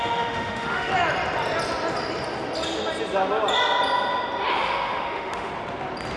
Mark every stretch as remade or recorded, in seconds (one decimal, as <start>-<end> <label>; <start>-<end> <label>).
0.0-0.9 remade; 0.9-4.5 recorded; 4.5-5.5 remade; 5.5-6.2 recorded